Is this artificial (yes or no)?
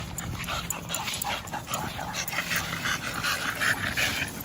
no